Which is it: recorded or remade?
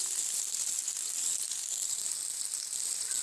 recorded